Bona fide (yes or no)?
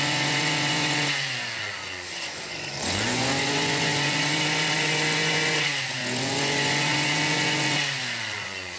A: no